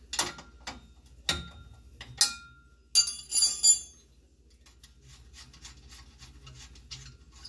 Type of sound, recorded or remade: recorded